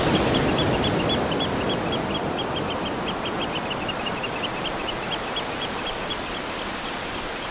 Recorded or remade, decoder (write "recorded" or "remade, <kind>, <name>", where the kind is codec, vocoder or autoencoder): recorded